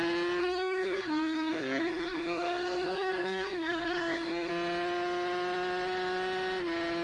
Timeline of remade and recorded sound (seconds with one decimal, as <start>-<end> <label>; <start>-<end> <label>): 0.0-0.4 recorded; 0.4-4.5 remade; 4.5-7.0 recorded

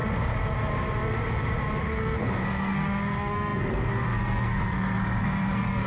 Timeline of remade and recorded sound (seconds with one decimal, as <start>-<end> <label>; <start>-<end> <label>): 0.0-1.8 recorded; 1.8-5.9 remade

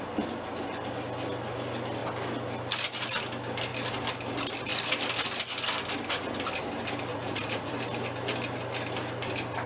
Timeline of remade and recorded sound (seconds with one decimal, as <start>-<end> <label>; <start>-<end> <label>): 0.0-7.1 recorded; 7.1-7.7 remade; 7.7-9.7 recorded

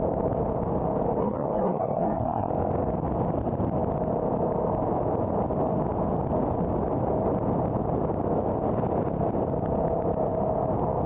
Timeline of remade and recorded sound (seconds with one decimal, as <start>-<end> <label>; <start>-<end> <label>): 0.0-1.2 recorded; 1.2-2.5 remade; 2.5-11.1 recorded

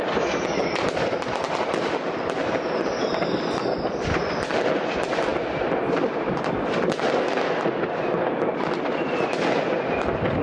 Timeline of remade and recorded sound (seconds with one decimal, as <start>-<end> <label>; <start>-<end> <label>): 0.0-10.4 recorded